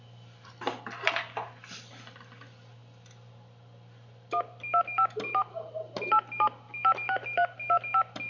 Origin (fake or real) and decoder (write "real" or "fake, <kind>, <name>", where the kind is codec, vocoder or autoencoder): real